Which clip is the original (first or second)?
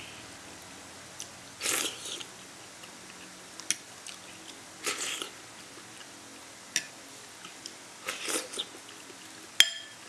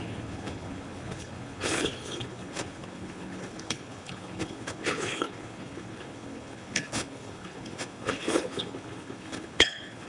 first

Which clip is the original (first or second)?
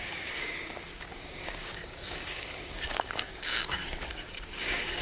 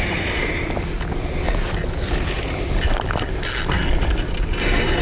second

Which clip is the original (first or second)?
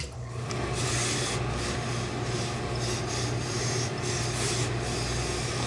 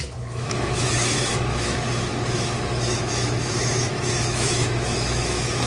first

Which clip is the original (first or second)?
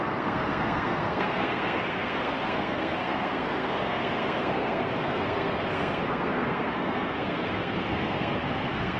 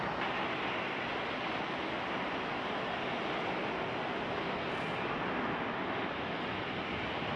second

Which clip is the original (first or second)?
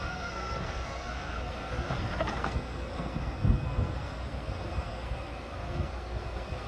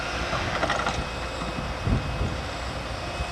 second